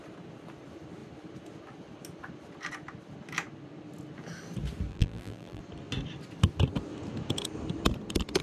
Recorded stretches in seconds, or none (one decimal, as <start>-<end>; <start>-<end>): 0.0-4.9; 5.6-8.4